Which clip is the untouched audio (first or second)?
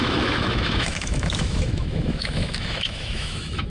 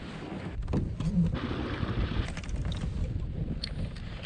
second